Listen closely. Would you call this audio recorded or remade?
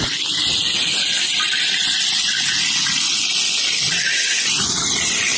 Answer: recorded